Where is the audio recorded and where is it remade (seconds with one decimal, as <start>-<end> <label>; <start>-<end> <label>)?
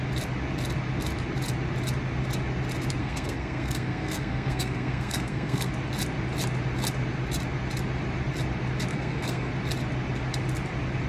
0.0-3.0 recorded; 3.0-5.7 remade; 5.7-8.9 recorded; 8.9-9.5 remade; 9.5-11.1 recorded